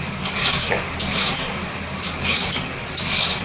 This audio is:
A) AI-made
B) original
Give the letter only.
A